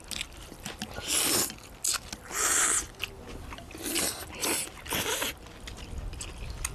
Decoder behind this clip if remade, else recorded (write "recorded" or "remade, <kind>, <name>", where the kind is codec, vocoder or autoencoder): recorded